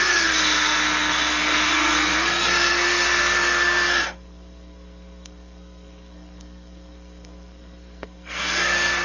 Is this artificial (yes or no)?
yes